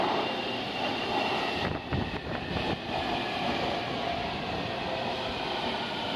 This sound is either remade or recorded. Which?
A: recorded